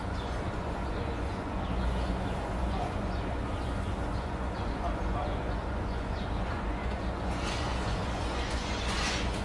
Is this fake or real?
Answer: fake